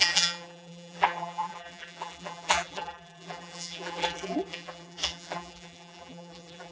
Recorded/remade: remade